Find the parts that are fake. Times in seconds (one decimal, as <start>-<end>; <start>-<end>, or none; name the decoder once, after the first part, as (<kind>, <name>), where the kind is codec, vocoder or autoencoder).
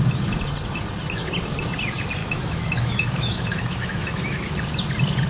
2.2-4.5 (autoencoder, DAC-VAE)